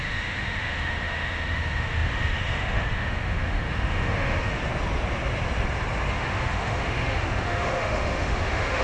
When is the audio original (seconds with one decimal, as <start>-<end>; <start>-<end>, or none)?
4.6-6.1